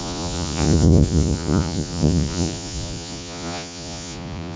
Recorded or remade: remade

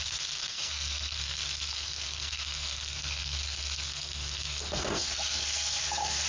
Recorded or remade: remade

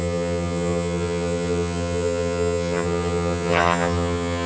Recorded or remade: remade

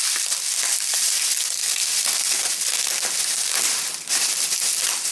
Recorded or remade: recorded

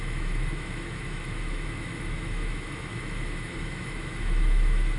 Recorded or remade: remade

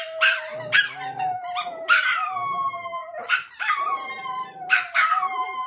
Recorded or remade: remade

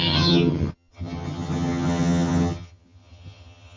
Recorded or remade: remade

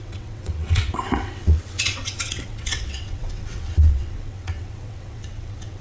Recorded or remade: remade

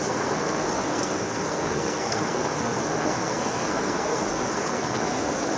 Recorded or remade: remade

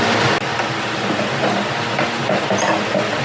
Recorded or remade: recorded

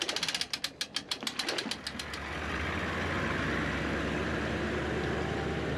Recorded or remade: recorded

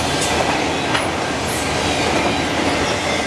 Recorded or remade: recorded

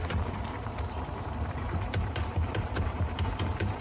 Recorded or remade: remade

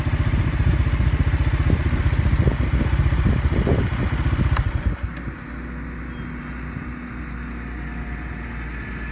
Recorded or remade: recorded